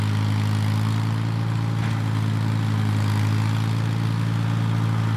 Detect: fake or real real